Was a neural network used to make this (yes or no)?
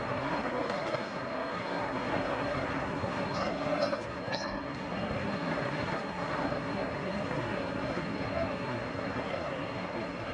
yes